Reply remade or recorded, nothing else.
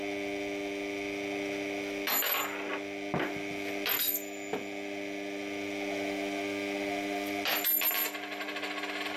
recorded